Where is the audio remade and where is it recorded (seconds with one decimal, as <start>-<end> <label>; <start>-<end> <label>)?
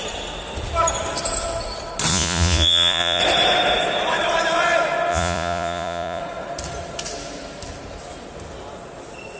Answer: 0.0-2.1 recorded; 2.1-3.2 remade; 3.2-5.1 recorded; 5.1-6.2 remade; 6.2-9.4 recorded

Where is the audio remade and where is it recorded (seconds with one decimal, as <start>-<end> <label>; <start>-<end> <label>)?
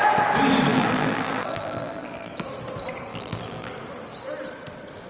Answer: 0.0-0.7 recorded; 0.7-2.3 remade; 2.3-3.1 recorded; 3.1-3.7 remade; 3.7-5.1 recorded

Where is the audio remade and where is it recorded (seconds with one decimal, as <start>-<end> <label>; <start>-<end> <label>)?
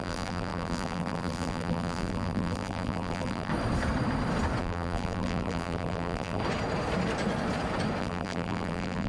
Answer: 0.0-3.5 remade; 3.5-4.6 recorded; 4.6-6.4 remade; 6.4-8.0 recorded; 8.0-9.1 remade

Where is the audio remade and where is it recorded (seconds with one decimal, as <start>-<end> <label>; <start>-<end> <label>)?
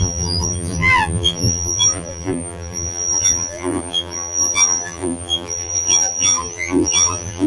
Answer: 0.0-7.5 remade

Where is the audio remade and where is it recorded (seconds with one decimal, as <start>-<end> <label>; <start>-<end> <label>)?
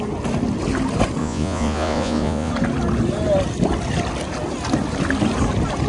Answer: 0.0-1.2 recorded; 1.2-2.5 remade; 2.5-5.9 recorded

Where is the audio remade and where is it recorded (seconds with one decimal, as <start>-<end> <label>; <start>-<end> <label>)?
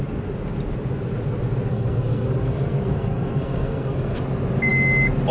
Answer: 0.0-1.7 recorded; 1.7-4.2 remade; 4.2-5.3 recorded